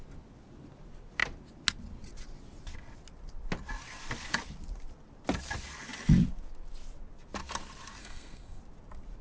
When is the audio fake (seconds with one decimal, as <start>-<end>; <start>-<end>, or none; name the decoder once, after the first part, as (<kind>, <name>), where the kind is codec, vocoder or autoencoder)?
8.0-8.6 (codec, SNAC)